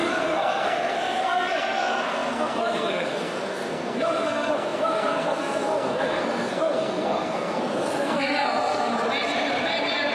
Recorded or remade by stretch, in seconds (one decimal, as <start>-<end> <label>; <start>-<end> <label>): 0.0-8.9 remade; 8.9-10.1 recorded